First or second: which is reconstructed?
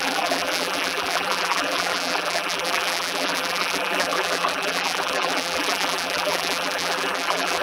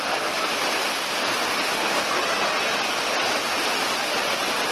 first